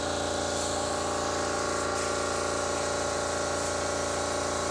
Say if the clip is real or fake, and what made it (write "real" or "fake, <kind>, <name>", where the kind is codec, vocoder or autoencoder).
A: real